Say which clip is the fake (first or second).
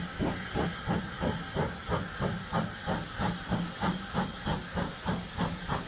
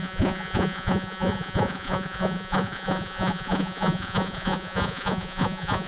second